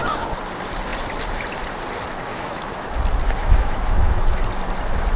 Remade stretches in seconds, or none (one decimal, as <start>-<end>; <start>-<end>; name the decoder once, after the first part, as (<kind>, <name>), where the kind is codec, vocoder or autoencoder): 2.3-2.9 (autoencoder, DAC-VAE); 3.4-4.4